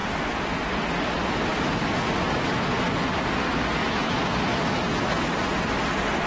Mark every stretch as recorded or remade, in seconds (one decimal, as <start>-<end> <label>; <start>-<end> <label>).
0.0-3.8 recorded; 3.8-5.2 remade; 5.2-6.3 recorded